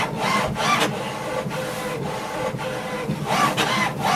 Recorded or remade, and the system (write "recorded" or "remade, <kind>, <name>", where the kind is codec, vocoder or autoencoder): recorded